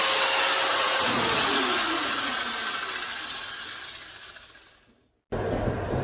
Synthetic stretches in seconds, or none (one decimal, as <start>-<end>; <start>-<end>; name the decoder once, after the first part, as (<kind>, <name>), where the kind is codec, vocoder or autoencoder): 0.7-2.5 (vocoder, Vocos)